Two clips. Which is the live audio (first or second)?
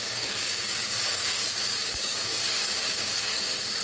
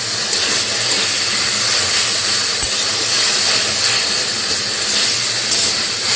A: second